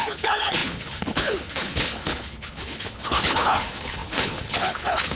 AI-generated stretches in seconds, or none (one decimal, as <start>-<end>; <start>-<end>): 0.0-5.2